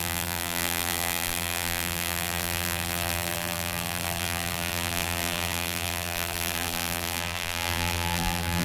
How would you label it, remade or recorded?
remade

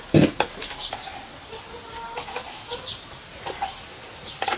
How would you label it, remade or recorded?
recorded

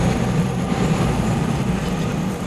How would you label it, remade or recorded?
recorded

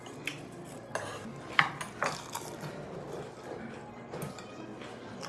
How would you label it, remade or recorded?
recorded